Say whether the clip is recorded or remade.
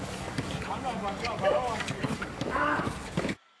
remade